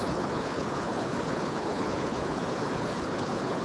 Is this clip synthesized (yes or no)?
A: yes